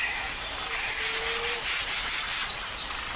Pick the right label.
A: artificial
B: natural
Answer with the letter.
B